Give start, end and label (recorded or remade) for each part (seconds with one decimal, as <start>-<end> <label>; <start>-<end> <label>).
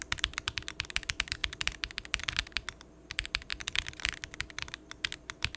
0.0-5.6 recorded